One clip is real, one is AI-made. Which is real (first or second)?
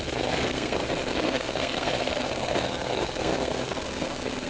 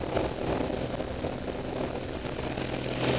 second